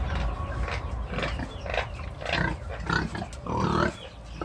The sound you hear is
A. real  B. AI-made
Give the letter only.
A